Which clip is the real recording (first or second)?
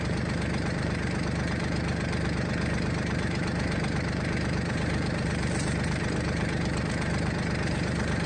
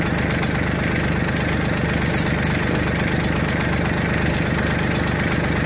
second